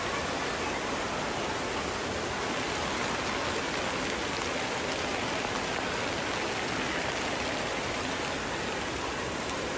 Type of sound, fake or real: real